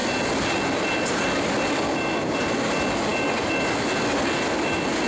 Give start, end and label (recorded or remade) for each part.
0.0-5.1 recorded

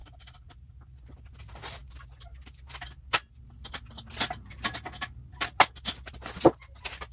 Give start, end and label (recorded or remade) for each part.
0.0-0.7 remade; 0.7-7.1 recorded

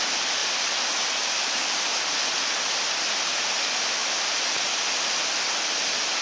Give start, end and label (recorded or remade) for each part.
0.0-6.2 recorded

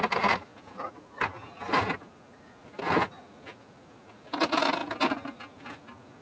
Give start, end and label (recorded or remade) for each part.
0.0-6.2 recorded

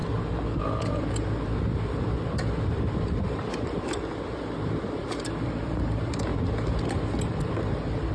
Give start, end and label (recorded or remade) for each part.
0.0-0.6 recorded; 0.6-6.3 remade; 6.3-7.3 recorded; 7.3-8.1 remade

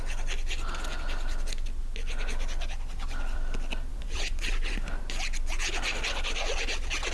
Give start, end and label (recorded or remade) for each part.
0.0-3.9 recorded; 3.9-5.0 remade; 5.0-7.1 recorded